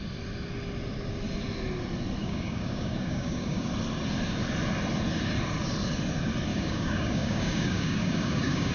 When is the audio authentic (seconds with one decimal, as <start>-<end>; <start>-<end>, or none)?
0.0-2.2; 3.7-6.5